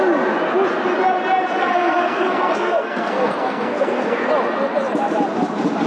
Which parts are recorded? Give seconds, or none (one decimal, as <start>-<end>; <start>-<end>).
0.0-1.6; 4.3-5.9